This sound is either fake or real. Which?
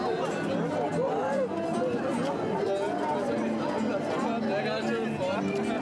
real